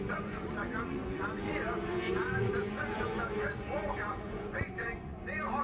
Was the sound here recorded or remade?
remade